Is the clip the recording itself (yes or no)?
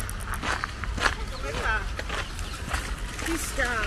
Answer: yes